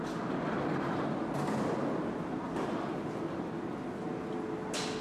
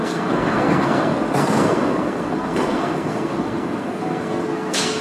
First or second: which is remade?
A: second